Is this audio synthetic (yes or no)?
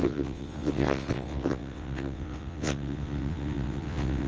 yes